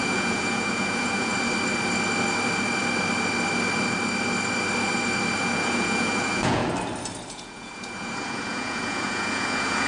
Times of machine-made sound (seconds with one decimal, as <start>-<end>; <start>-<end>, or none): 0.0-1.3; 5.4-6.6; 7.3-9.9